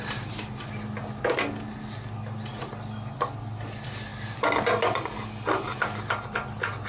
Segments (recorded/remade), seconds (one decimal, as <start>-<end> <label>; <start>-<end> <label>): 0.0-6.9 recorded